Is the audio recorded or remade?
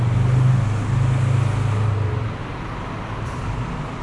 recorded